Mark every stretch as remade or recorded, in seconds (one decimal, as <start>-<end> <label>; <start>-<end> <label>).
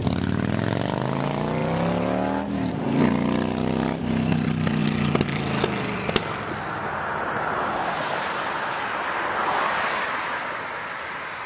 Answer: 0.0-4.8 recorded; 4.8-8.6 remade; 8.6-11.5 recorded